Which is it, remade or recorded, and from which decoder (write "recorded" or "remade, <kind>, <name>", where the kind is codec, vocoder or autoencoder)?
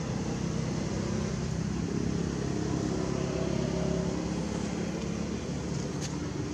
recorded